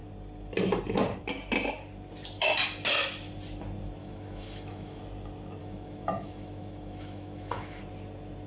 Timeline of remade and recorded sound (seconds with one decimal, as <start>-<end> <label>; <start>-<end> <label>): 0.0-4.0 recorded; 4.0-5.0 remade; 5.0-5.6 recorded; 5.6-7.8 remade; 7.8-8.5 recorded